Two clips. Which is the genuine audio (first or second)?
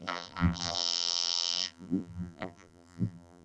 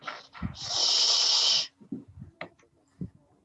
second